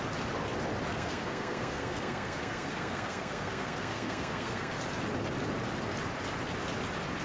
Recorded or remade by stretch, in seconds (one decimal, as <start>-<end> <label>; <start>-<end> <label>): 0.0-0.9 recorded; 0.9-4.7 remade; 4.7-7.2 recorded